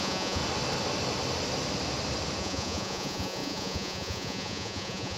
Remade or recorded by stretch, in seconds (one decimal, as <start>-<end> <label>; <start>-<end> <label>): 0.0-0.4 remade; 0.4-2.4 recorded; 2.4-5.2 remade